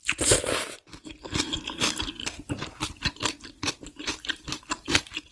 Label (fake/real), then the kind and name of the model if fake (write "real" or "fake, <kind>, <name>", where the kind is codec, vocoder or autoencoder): fake, vocoder, BigVGAN v2